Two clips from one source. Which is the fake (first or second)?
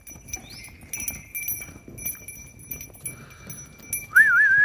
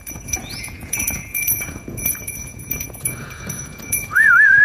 second